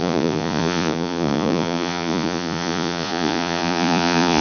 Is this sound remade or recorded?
remade